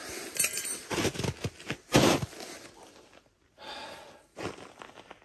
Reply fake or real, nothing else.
real